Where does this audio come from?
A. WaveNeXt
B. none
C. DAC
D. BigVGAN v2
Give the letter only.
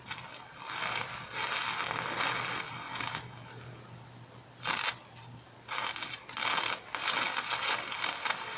B